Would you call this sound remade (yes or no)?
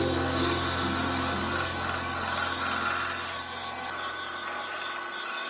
no